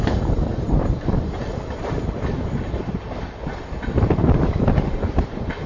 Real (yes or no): no